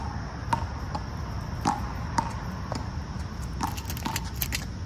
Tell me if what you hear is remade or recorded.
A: recorded